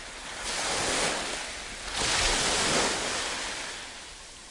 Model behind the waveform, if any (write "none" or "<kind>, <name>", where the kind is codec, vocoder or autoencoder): none